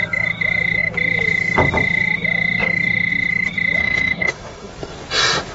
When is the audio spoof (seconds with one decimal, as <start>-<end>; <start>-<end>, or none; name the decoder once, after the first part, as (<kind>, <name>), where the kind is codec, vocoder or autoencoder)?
3.8-4.7 (autoencoder, DAC-VAE)